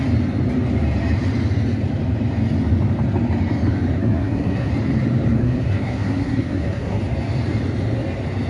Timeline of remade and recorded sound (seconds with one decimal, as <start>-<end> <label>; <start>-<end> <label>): 0.0-4.0 recorded; 4.0-4.7 remade; 4.7-5.4 recorded; 5.4-7.0 remade; 7.0-8.5 recorded